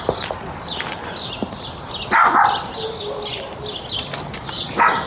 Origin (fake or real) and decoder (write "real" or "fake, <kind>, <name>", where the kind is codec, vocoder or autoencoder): real